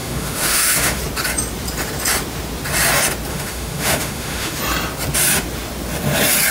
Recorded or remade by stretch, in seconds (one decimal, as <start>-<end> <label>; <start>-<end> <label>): 0.0-1.0 remade; 1.0-3.3 recorded; 3.3-4.6 remade; 4.6-6.5 recorded